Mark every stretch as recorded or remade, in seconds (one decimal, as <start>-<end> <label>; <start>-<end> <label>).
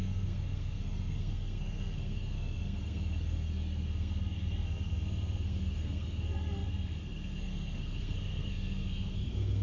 0.0-9.6 remade